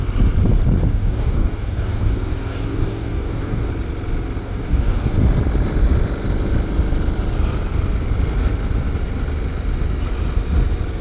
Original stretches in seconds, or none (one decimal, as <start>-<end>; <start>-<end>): 0.0-0.9; 3.7-4.4; 5.1-11.0